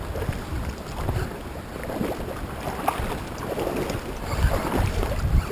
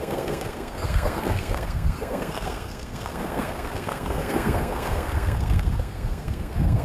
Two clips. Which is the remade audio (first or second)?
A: second